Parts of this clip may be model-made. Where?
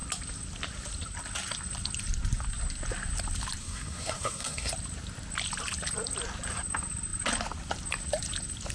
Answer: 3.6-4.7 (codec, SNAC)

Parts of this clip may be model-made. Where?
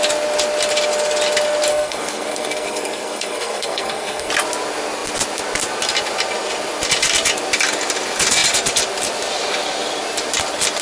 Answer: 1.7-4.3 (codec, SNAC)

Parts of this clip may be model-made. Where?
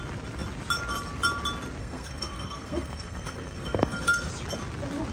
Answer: 1.8-4.3 (codec, SNAC)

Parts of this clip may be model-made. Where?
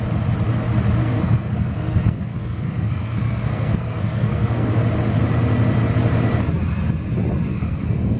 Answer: 1.0-4.7 (codec, SNAC); 7.5-8.2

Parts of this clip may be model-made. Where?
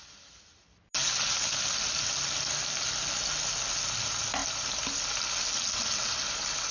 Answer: none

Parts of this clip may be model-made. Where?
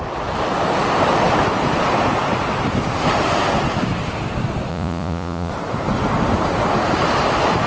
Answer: 4.7-5.5 (vocoder, Vocos)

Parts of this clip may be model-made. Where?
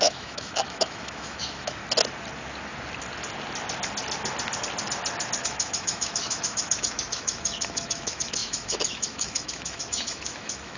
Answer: 0.0-1.8 (autoencoder, DAC-VAE); 5.4-10.8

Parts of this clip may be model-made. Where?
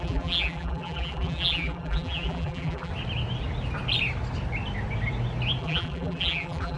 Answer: 0.0-2.9 (vocoder, BigVGAN v2); 5.6-6.8